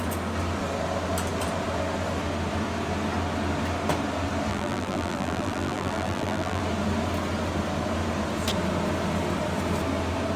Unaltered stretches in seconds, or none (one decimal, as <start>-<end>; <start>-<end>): 0.0-4.5; 6.6-10.4

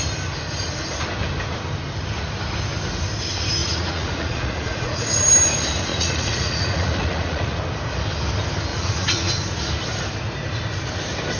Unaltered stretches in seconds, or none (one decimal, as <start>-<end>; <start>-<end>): 0.0-3.6; 5.3-5.9; 7.6-8.7; 9.3-11.4